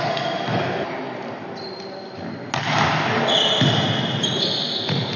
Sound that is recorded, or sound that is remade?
recorded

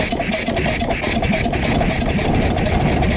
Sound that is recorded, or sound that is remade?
recorded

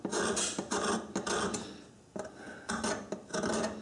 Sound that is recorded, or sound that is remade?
recorded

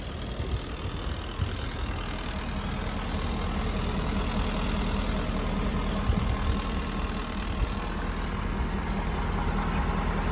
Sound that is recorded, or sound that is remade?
recorded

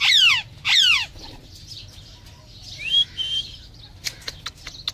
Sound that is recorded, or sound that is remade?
recorded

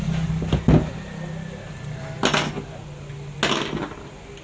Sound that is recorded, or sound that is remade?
recorded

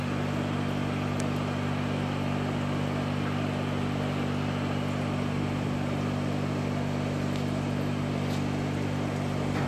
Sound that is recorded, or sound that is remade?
recorded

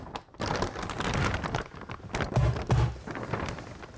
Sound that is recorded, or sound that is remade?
recorded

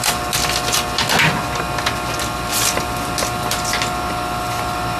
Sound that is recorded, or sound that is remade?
recorded